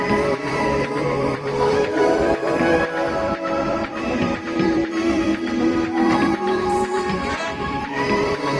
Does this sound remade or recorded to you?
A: remade